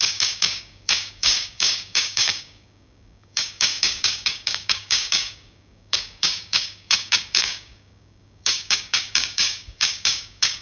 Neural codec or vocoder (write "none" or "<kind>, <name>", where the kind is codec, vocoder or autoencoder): codec, DAC